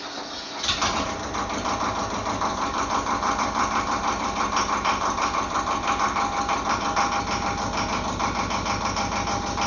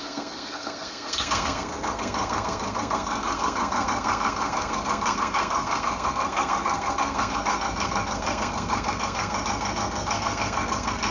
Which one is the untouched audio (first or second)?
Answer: first